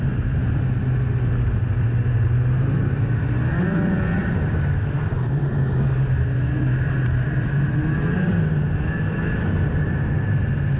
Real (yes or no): yes